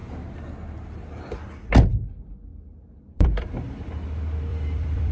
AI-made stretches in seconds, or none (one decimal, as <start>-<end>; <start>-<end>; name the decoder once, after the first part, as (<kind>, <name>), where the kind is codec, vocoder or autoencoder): 2.5-3.9 (vocoder, BigVGAN v2); 4.5-5.1